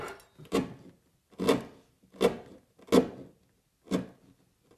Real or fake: real